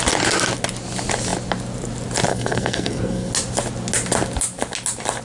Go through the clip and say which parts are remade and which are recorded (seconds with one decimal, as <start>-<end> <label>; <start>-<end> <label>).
0.0-2.3 recorded; 2.3-3.3 remade; 3.3-5.2 recorded